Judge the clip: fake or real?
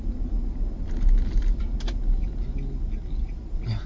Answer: real